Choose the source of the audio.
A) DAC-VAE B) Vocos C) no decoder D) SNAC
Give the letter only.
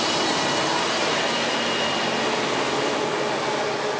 C